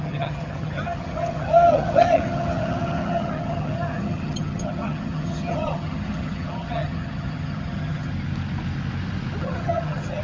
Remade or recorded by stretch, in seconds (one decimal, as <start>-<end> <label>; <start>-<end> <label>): 0.0-8.1 remade; 8.1-9.4 recorded; 9.4-10.2 remade